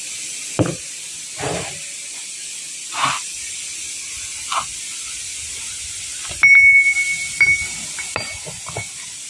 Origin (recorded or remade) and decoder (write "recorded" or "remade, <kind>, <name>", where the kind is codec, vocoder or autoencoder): recorded